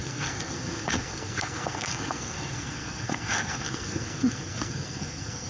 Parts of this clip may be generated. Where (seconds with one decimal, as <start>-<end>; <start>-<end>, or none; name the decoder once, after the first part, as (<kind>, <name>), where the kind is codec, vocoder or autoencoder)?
0.0-5.5 (codec, SNAC)